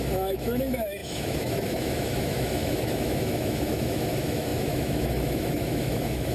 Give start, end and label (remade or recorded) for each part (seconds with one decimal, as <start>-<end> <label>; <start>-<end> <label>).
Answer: 0.0-6.3 remade

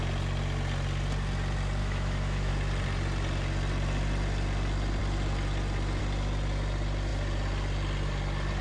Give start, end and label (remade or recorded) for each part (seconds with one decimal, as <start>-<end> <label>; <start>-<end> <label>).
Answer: 0.0-1.8 recorded; 1.8-2.5 remade; 2.5-8.6 recorded

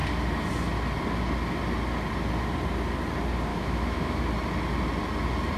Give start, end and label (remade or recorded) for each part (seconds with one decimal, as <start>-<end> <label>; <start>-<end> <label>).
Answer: 0.0-3.5 recorded; 3.5-4.2 remade; 4.2-5.6 recorded